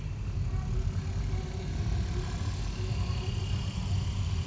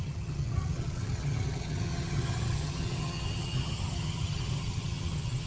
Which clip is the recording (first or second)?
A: first